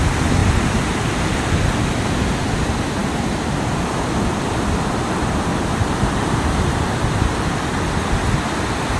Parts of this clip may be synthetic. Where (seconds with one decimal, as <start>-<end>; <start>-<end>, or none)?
0.4-1.3; 3.0-6.3